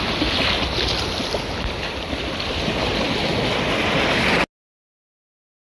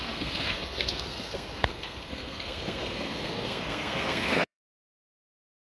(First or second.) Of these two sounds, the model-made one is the second